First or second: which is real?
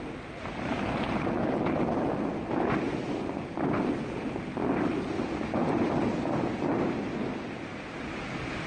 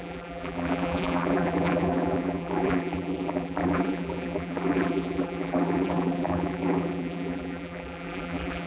first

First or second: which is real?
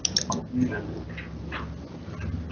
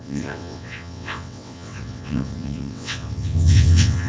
first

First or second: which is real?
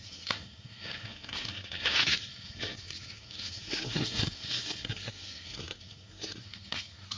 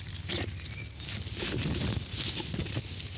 second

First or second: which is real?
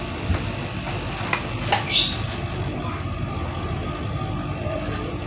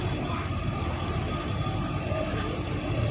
first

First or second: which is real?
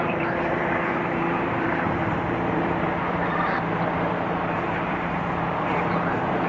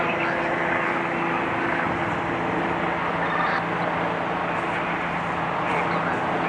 second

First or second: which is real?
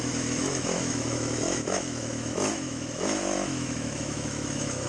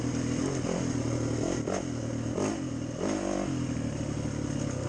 second